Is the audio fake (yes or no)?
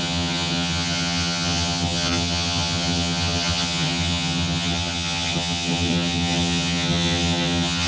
yes